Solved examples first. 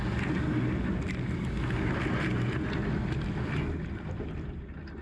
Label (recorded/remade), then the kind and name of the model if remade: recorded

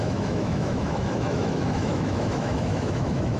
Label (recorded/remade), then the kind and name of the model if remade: remade, autoencoder, DAC-VAE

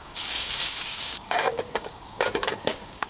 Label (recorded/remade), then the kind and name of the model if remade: remade, codec, DAC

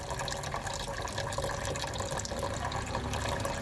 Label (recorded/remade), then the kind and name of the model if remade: recorded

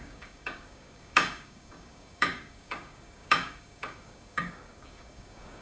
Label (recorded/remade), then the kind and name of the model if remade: remade, codec, DAC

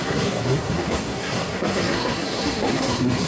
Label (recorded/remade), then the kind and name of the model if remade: remade, codec, SNAC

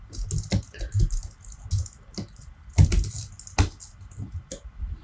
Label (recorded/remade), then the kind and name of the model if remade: recorded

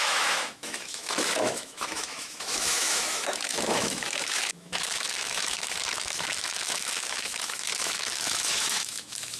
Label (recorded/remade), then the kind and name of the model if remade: remade, autoencoder, DAC-VAE